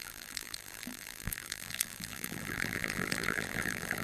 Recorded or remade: remade